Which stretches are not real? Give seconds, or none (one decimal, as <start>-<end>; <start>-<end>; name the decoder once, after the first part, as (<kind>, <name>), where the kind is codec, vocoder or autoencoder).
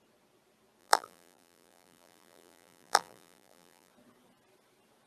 0.8-3.9 (vocoder, BigVGAN v2)